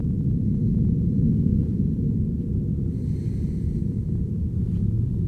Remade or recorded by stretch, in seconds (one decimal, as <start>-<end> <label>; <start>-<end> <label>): 0.0-0.6 remade; 0.6-1.5 recorded; 1.5-4.4 remade; 4.4-5.3 recorded